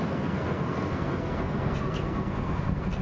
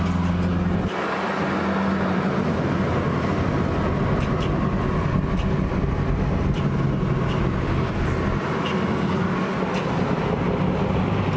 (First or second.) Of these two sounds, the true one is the second